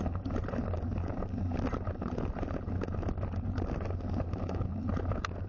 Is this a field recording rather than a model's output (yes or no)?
yes